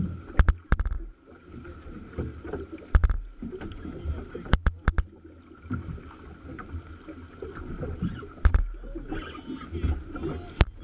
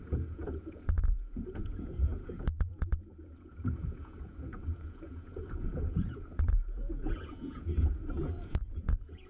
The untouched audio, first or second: first